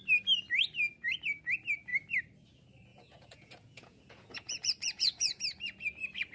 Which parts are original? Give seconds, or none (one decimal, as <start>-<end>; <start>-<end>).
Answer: 0.0-2.9; 5.4-6.3